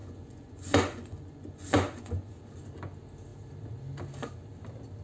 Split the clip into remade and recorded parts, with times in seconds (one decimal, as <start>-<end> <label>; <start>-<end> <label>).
0.0-2.3 remade; 2.3-5.0 recorded

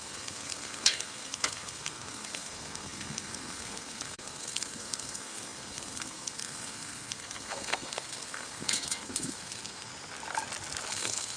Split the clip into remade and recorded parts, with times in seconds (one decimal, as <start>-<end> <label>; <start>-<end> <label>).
0.0-9.9 remade; 9.9-10.9 recorded; 10.9-11.4 remade

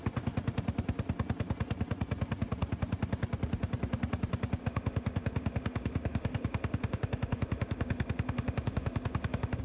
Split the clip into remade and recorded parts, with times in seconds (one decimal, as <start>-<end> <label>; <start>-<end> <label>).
0.0-4.6 recorded; 4.6-9.6 remade